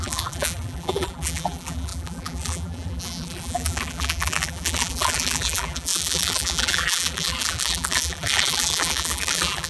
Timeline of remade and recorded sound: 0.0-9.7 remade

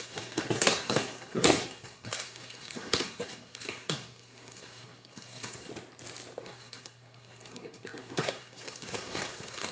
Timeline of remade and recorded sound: 0.0-5.7 remade; 5.7-6.4 recorded; 6.4-9.7 remade

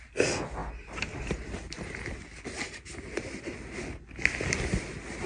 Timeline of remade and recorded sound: 0.0-5.3 recorded

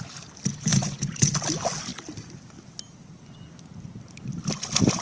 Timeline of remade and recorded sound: 0.0-0.7 recorded; 0.7-1.3 remade; 1.3-5.0 recorded

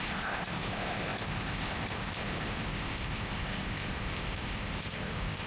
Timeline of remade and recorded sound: 0.0-5.5 remade

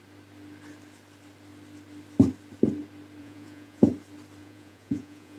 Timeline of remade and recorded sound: 0.0-3.2 recorded; 3.2-3.9 remade; 3.9-4.4 recorded; 4.4-5.4 remade

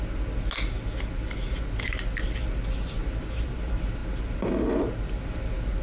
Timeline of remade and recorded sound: 0.0-5.8 recorded